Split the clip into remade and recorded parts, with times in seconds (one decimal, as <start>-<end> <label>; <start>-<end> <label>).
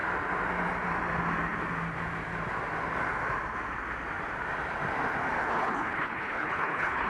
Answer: 0.0-5.4 recorded; 5.4-7.1 remade